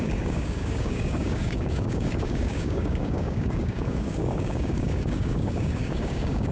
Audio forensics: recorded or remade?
remade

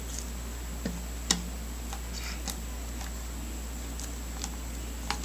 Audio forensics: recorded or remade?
recorded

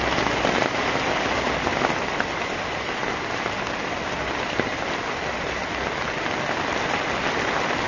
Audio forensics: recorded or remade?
recorded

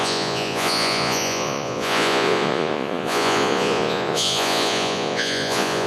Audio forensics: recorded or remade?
remade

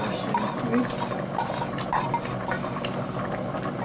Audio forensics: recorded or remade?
recorded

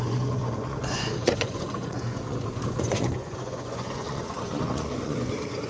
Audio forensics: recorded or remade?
remade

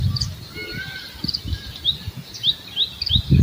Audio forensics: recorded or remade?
recorded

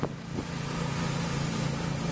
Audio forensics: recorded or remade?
recorded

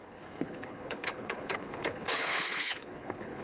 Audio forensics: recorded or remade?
remade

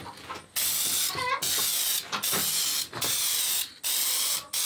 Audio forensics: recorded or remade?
recorded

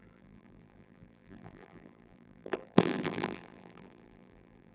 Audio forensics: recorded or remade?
remade